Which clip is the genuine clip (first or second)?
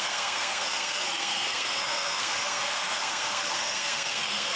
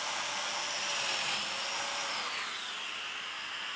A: second